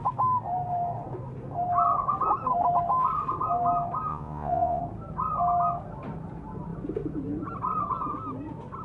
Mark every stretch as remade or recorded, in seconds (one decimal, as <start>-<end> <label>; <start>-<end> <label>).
0.0-4.1 recorded; 4.1-4.8 remade; 4.8-8.8 recorded